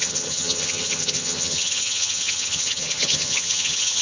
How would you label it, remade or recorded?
remade